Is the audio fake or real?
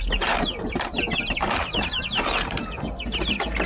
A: real